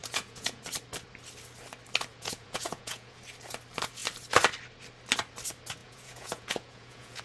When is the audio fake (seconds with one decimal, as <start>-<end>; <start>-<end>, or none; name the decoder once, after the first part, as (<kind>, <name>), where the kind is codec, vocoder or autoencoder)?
0.0-0.6 (vocoder, Vocos); 2.1-3.2; 5.8-7.2